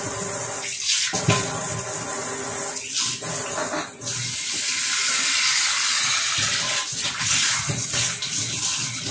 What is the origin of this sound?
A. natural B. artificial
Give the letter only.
A